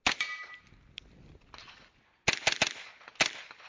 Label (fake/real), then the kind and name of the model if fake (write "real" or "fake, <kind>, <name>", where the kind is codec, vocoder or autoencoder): real